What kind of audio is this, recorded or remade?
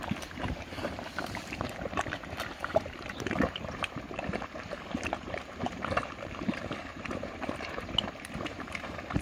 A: remade